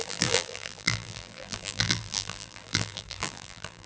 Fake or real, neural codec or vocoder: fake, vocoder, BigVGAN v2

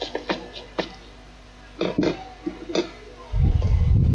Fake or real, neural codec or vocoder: real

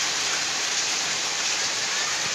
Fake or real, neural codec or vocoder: fake, vocoder, BigVGAN v2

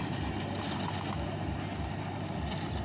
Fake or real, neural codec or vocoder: real